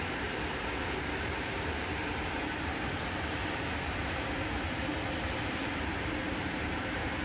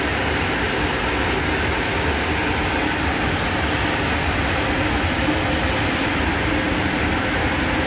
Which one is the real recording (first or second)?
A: second